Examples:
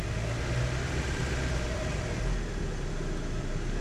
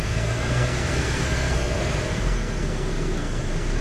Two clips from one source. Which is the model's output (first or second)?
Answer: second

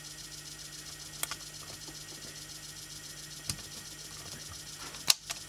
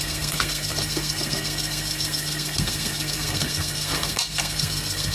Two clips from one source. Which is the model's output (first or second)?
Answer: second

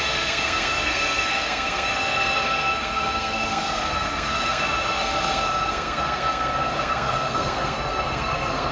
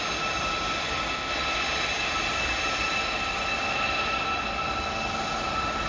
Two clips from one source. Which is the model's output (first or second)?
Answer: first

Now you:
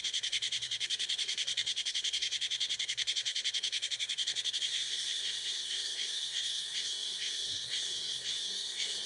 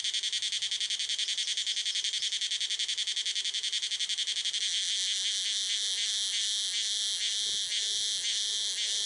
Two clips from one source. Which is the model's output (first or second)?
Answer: first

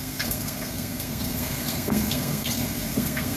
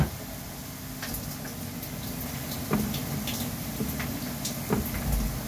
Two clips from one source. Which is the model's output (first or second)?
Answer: first